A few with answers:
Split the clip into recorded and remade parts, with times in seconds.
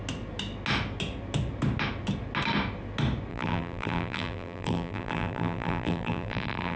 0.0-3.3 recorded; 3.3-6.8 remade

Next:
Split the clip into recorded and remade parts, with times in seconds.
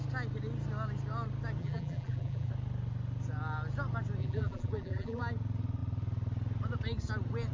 0.0-1.6 recorded; 1.6-2.5 remade; 2.5-4.2 recorded; 4.2-5.2 remade; 5.2-7.5 recorded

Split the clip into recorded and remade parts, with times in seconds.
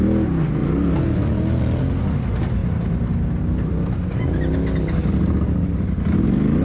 0.0-2.6 recorded; 2.6-3.9 remade; 3.9-6.6 recorded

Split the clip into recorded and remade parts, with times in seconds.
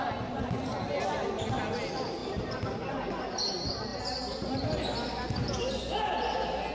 0.0-2.2 recorded; 2.2-2.9 remade; 2.9-6.7 recorded